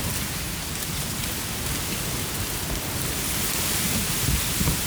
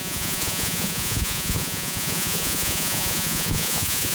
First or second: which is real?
first